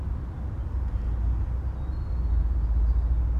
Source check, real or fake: real